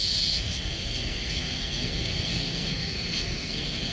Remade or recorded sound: remade